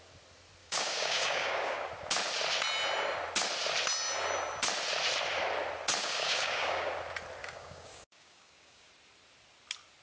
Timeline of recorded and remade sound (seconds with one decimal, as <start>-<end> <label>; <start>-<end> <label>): 0.0-0.6 recorded; 0.6-1.9 remade; 1.9-6.0 recorded; 6.0-6.9 remade; 6.9-7.4 recorded; 7.4-8.9 remade; 8.9-10.0 recorded